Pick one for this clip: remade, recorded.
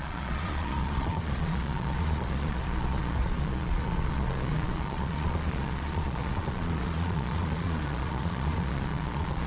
remade